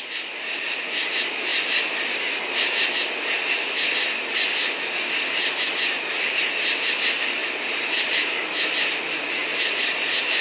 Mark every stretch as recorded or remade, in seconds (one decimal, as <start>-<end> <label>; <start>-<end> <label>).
0.0-10.4 recorded

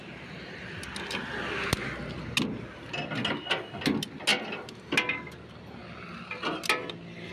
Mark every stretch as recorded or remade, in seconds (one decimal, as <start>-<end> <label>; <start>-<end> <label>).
0.0-7.3 recorded

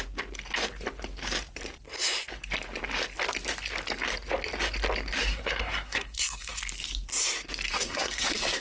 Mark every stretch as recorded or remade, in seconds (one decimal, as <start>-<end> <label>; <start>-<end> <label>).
0.0-5.2 recorded; 5.2-6.6 remade; 6.6-7.7 recorded; 7.7-8.6 remade

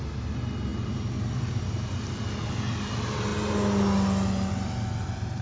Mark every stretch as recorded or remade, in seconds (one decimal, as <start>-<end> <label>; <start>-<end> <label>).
0.0-5.4 recorded

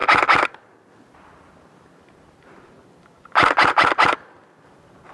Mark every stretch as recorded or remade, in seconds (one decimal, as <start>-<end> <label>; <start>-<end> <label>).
0.0-5.1 recorded